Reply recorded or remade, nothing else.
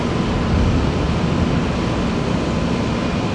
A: recorded